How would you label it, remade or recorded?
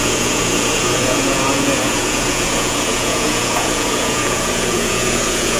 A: remade